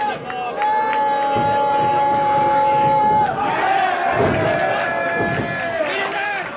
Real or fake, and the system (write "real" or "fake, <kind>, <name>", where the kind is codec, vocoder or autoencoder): real